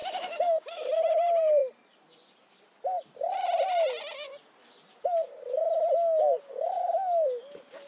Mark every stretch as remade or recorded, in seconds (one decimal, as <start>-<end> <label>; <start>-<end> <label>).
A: 0.0-1.0 remade; 1.0-7.9 recorded